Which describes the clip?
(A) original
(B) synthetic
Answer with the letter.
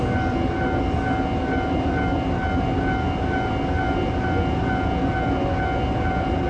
A